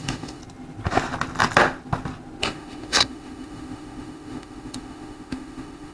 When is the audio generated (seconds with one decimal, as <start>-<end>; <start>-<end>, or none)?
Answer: 0.0-0.4; 2.4-5.9